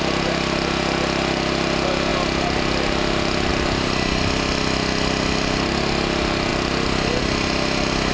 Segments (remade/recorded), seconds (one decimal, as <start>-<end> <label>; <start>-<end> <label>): 0.0-8.1 recorded